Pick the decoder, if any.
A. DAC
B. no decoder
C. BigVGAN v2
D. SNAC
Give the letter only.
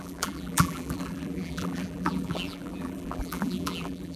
C